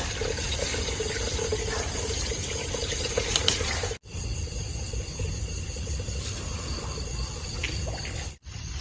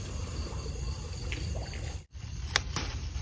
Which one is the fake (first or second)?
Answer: second